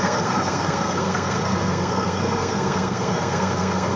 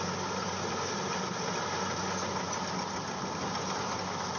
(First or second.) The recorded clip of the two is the second